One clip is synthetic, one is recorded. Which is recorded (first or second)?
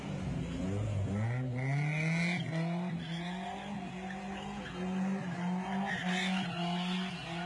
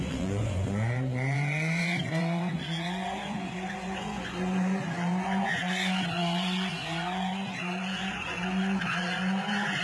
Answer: first